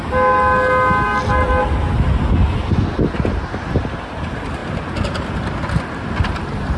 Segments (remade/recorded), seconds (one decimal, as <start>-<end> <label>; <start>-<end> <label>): 0.0-6.8 recorded